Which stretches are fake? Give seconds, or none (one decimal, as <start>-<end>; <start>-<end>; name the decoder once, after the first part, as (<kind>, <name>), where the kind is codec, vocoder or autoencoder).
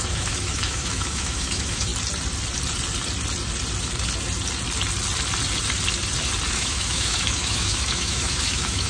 0.0-1.9 (autoencoder, DAC-VAE); 6.5-8.9